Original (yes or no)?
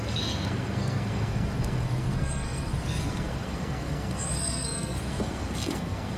no